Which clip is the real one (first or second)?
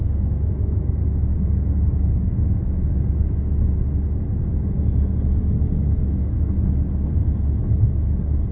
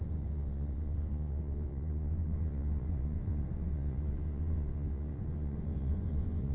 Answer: first